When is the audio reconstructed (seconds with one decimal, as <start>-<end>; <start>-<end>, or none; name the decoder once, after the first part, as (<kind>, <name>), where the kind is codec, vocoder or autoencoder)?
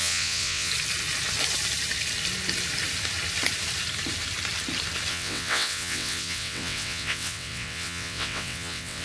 0.0-0.7 (vocoder, WaveNeXt); 5.1-9.0